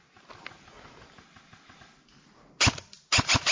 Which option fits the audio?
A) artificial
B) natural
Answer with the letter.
B